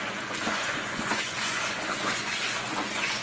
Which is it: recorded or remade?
remade